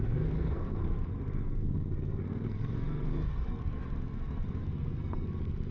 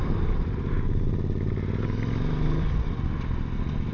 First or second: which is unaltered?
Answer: second